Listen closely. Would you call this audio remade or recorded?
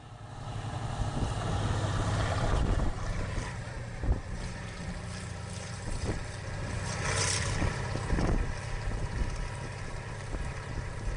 remade